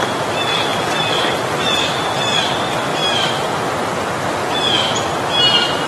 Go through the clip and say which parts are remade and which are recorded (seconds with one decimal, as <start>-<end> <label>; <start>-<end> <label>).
0.0-5.9 recorded